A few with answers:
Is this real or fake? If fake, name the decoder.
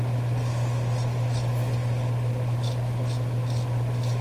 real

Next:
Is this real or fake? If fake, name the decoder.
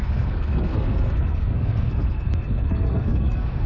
fake, codec, SNAC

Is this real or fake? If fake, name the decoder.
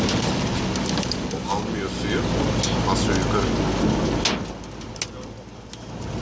real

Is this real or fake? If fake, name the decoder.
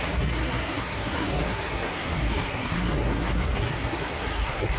fake, codec, SNAC